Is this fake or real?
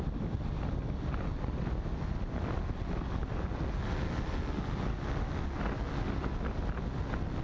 real